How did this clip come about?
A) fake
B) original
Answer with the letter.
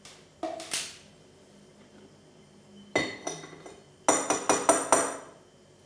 B